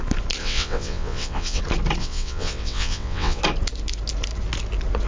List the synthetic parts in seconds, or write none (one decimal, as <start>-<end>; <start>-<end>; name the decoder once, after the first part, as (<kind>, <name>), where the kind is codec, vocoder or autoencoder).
0.4-1.6 (vocoder, WaveNeXt); 2.0-3.4